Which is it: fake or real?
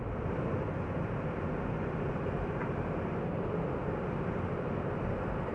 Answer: real